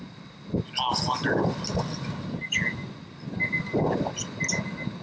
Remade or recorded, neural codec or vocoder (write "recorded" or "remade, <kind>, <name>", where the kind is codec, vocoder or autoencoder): recorded